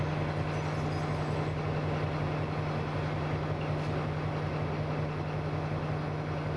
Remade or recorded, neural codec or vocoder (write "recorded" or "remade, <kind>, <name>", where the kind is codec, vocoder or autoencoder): recorded